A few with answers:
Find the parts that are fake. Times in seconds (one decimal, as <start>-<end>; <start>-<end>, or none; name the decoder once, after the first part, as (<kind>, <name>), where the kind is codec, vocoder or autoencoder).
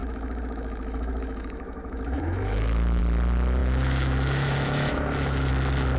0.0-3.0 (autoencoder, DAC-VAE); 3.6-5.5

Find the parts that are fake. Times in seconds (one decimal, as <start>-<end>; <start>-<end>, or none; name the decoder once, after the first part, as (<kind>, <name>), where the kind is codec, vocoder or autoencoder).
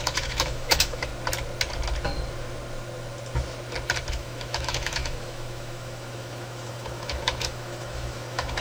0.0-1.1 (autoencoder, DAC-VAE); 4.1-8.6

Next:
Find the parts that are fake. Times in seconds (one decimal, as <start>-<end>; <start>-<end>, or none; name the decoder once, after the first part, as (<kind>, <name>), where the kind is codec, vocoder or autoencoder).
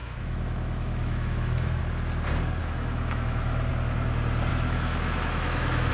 0.0-1.8 (autoencoder, DAC-VAE); 2.6-3.7; 4.5-5.9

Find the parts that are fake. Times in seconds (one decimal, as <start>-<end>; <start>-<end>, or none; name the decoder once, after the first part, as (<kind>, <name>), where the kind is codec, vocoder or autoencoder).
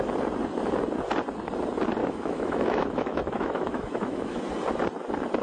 2.0-4.4 (autoencoder, DAC-VAE)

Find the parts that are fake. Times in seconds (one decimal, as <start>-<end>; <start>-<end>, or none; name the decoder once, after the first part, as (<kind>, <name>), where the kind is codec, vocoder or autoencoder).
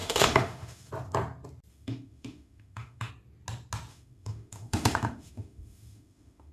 0.0-0.9 (autoencoder, DAC-VAE); 1.7-3.1; 3.9-6.5